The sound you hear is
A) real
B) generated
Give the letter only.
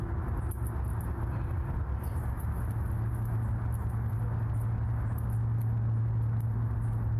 A